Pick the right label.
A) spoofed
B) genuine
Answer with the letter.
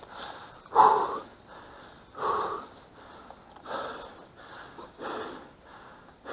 B